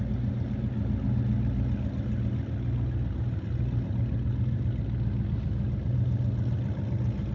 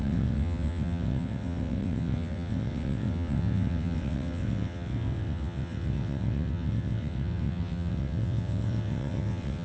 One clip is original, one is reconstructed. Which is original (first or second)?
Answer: first